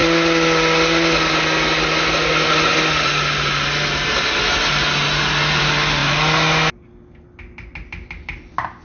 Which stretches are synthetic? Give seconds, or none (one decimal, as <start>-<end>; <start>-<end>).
none